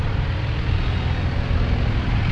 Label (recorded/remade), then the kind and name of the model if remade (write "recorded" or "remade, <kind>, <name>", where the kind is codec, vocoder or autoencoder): recorded